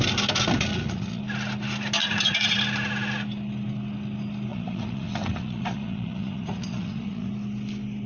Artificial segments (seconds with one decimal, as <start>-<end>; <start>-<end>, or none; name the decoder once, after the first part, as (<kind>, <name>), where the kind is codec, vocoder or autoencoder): 0.7-1.2 (vocoder, Vocos); 2.0-2.6; 4.5-7.3